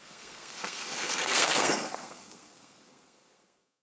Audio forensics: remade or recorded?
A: remade